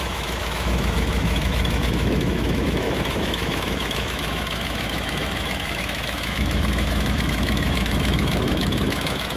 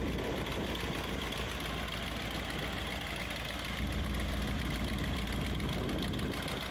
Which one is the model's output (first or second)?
first